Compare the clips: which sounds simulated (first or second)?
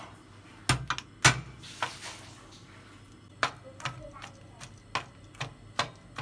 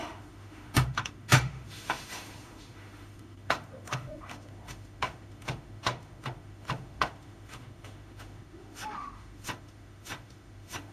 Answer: second